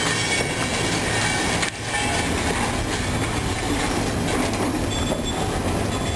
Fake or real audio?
real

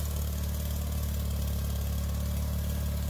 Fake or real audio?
real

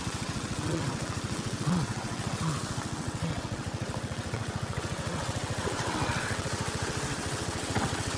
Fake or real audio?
fake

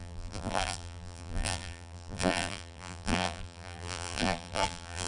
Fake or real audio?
fake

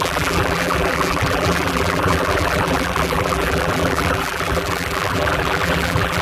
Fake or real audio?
fake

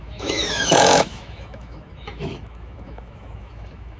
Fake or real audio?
fake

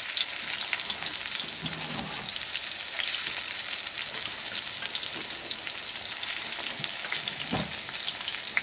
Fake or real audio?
real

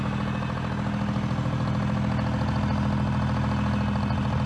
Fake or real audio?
real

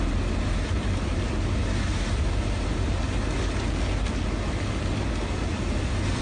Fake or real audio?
real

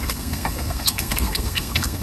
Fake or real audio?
fake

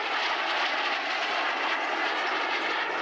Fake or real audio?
real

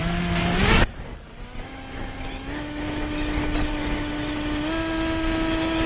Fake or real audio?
real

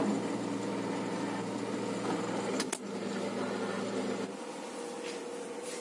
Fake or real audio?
real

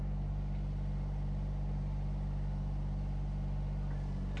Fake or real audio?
real